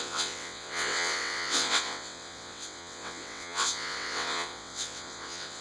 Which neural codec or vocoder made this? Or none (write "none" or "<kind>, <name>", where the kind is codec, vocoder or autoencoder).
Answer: vocoder, WaveNeXt